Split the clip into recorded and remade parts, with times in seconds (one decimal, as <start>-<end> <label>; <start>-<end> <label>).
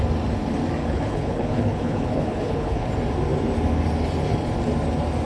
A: 0.0-0.8 recorded; 0.8-2.9 remade; 2.9-5.3 recorded